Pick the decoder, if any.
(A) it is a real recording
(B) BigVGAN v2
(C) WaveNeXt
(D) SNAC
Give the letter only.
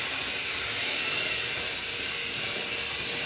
A